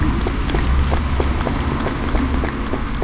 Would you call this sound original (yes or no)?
yes